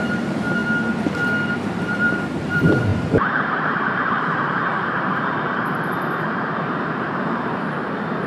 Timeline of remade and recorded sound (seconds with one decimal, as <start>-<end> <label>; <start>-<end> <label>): 0.0-0.6 remade; 0.6-1.6 recorded; 1.6-8.3 remade